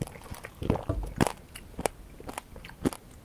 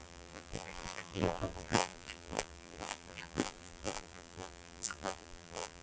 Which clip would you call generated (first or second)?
second